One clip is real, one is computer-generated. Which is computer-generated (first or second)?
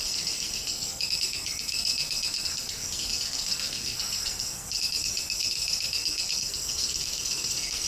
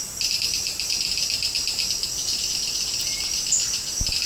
first